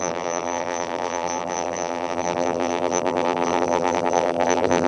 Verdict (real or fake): fake